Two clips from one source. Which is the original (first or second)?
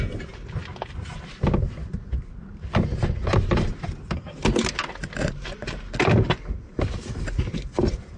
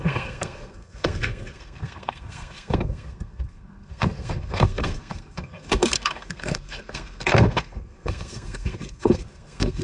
first